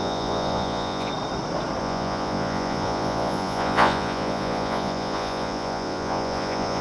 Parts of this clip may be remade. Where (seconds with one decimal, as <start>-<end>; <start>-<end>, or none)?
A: 0.0-1.1; 1.8-6.8